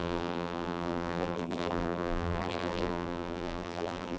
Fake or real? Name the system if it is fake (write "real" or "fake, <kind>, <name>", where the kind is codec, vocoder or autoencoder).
fake, vocoder, BigVGAN v2